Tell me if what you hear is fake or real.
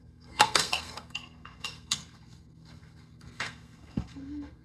fake